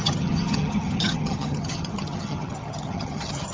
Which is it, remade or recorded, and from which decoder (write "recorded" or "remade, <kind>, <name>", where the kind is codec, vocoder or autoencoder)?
remade, vocoder, HiFi-GAN